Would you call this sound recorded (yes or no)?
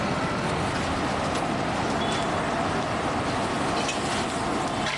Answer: yes